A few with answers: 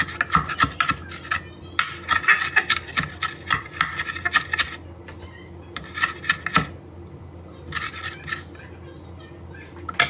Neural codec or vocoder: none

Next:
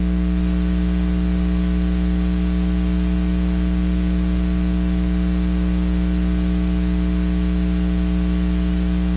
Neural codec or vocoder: none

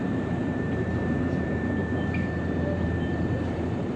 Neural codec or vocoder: vocoder, BigVGAN v2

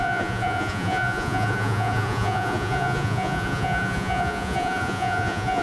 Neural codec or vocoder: vocoder, Vocos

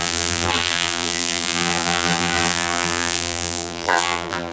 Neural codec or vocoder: vocoder, BigVGAN v2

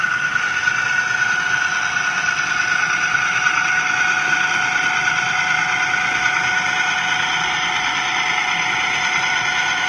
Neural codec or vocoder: none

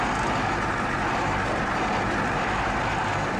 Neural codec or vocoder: none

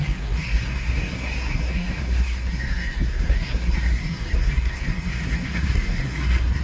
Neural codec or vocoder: codec, SNAC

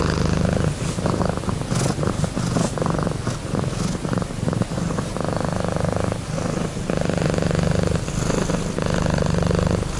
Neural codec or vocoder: none